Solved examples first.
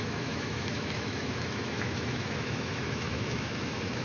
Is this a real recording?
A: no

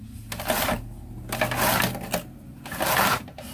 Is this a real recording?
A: yes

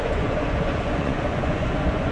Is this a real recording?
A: no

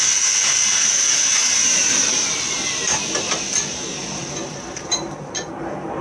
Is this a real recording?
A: no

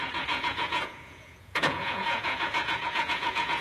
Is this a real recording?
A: no